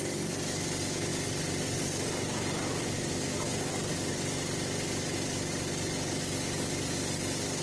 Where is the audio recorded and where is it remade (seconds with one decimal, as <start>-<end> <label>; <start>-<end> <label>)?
0.0-7.6 recorded

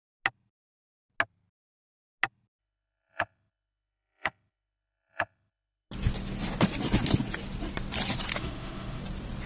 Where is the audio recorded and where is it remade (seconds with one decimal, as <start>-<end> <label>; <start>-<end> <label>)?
0.0-2.6 recorded; 2.6-5.9 remade; 5.9-8.4 recorded; 8.4-9.0 remade; 9.0-9.5 recorded

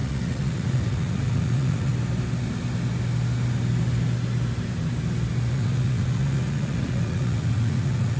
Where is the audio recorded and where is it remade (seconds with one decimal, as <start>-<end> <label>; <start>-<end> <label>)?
0.0-1.9 remade; 1.9-5.5 recorded; 5.5-8.2 remade

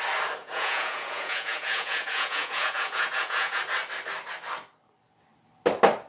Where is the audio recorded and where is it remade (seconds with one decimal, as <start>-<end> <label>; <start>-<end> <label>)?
0.0-0.4 recorded; 0.4-3.6 remade; 3.6-6.1 recorded

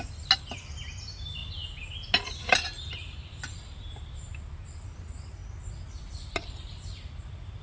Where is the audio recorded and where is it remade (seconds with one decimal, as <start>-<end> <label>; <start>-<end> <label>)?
0.0-7.6 recorded

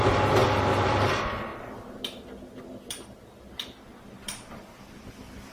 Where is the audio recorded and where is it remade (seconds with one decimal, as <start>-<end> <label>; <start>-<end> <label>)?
0.0-0.4 recorded; 0.4-1.1 remade; 1.1-1.5 recorded; 1.5-4.8 remade; 4.8-5.5 recorded